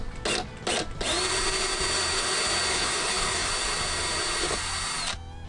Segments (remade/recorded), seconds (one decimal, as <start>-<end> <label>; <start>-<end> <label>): 0.0-2.7 recorded; 2.7-3.5 remade; 3.5-5.5 recorded